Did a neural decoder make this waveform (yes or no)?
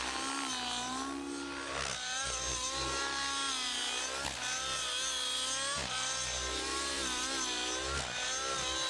no